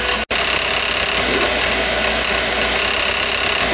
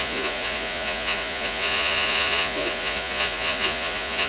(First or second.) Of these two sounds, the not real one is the second